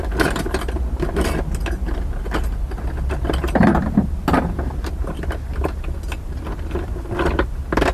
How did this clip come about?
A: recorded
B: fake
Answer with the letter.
A